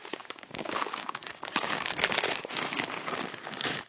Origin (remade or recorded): remade